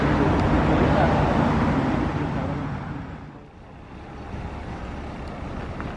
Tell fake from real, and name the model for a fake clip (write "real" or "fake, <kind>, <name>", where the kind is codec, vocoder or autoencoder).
real